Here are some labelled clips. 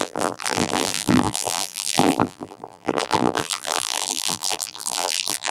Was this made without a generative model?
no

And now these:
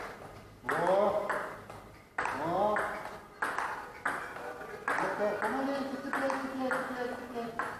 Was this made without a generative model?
yes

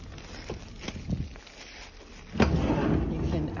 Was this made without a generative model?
yes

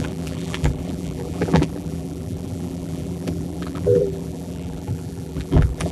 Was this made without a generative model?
no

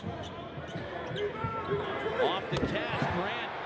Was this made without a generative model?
yes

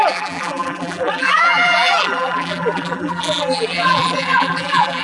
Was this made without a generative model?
no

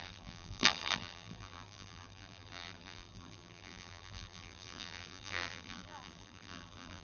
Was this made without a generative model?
no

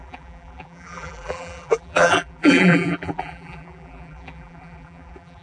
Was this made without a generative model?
no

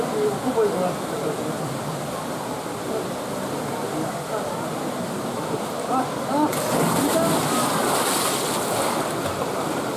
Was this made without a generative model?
yes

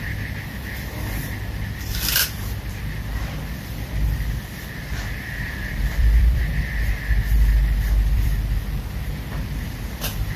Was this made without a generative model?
no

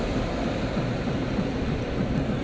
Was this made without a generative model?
no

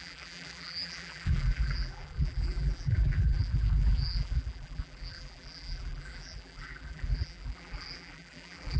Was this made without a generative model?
no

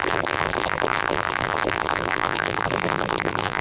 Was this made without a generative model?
no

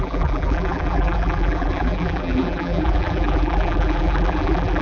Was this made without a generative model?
no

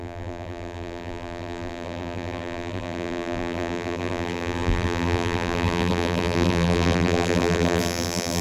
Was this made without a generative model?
no